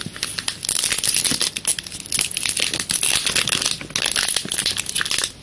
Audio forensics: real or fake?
real